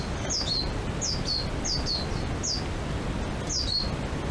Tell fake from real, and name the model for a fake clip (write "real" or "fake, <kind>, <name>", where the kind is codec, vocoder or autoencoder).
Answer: real